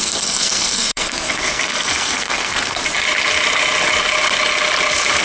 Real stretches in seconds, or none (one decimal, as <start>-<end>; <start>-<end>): 2.8-5.2